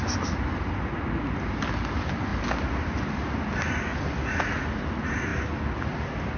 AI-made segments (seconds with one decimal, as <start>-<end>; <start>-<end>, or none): none